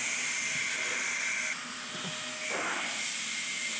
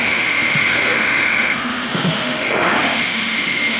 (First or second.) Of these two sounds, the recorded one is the first